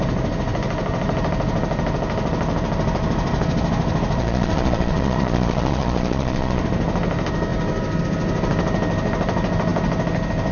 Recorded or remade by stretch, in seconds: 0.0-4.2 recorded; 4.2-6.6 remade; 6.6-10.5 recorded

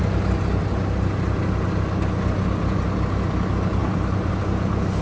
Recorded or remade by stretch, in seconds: 0.0-0.7 remade; 0.7-3.8 recorded; 3.8-4.3 remade; 4.3-5.0 recorded

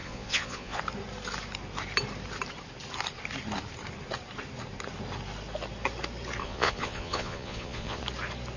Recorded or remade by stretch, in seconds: 0.0-0.8 remade; 0.8-6.4 recorded; 6.4-8.0 remade; 8.0-8.6 recorded